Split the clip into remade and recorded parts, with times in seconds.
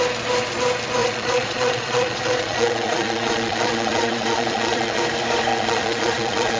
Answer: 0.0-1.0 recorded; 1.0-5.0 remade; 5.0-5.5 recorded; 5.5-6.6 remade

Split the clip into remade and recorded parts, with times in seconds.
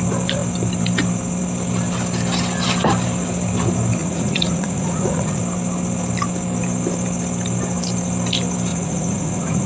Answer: 0.0-4.0 recorded; 4.0-5.4 remade; 5.4-8.7 recorded; 8.7-9.7 remade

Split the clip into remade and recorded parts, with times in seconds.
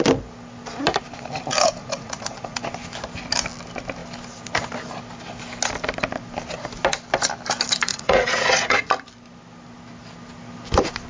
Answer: 0.0-1.8 recorded; 1.8-2.6 remade; 2.6-7.9 recorded; 7.9-8.9 remade; 8.9-11.1 recorded